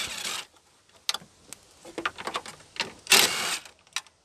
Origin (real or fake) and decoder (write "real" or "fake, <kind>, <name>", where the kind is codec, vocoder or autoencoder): real